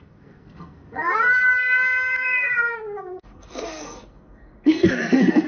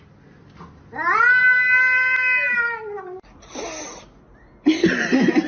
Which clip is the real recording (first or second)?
second